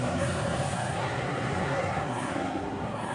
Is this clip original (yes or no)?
no